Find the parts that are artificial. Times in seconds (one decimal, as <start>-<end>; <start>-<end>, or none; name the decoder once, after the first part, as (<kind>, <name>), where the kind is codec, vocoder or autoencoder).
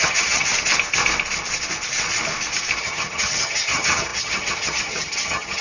0.0-0.5 (vocoder, HiFi-GAN); 2.8-5.6